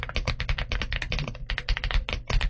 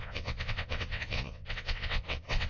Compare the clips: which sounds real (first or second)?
first